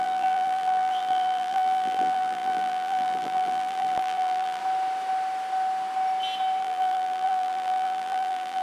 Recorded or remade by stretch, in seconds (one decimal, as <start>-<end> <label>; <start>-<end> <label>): 0.0-4.6 remade; 4.6-6.6 recorded; 6.6-8.6 remade